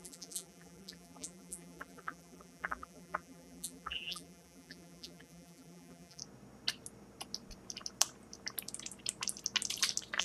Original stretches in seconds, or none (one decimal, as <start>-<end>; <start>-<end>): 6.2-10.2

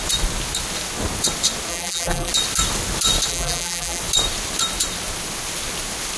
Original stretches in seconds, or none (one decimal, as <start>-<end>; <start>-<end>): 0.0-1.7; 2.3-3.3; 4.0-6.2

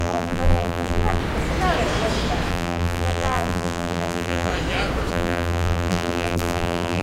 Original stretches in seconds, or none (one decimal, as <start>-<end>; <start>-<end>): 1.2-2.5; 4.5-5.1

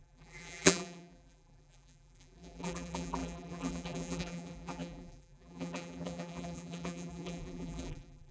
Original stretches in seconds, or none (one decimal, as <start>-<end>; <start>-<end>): none